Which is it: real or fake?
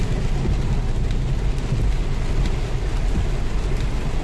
real